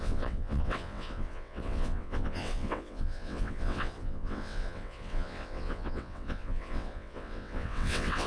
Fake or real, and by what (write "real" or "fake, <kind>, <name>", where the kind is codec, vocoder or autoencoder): fake, vocoder, WaveNeXt